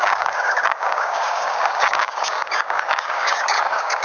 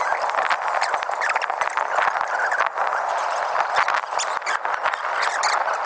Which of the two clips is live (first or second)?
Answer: second